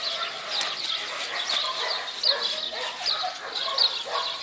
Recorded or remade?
recorded